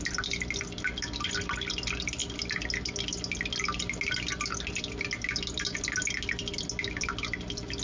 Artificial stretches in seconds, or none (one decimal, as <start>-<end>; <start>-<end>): none